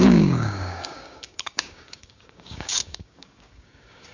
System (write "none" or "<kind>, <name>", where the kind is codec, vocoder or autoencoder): codec, DAC